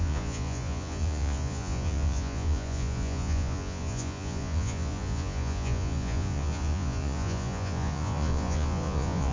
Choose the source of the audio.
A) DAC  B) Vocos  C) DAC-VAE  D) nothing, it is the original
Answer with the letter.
B